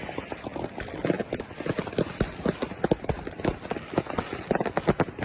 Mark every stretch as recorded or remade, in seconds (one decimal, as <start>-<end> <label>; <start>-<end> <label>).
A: 0.0-5.2 recorded